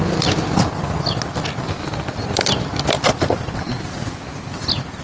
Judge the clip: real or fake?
real